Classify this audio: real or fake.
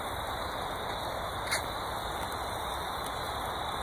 real